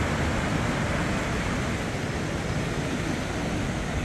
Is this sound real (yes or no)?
yes